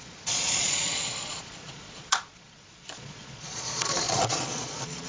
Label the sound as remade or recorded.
remade